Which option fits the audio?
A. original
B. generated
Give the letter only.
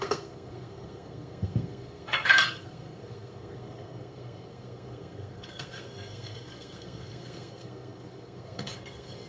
B